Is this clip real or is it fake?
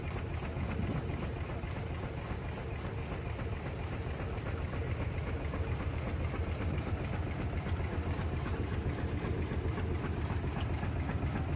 real